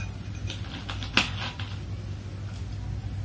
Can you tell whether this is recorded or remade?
recorded